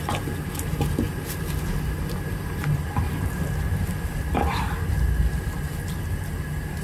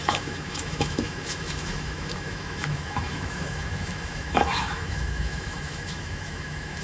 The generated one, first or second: second